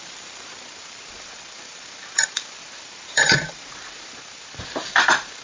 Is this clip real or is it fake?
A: fake